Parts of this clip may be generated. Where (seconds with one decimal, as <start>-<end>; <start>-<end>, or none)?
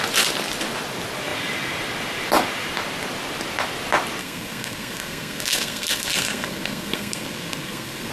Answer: 4.2-8.1